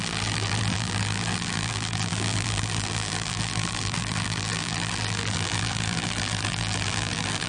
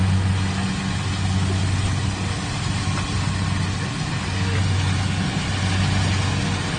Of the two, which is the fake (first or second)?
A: first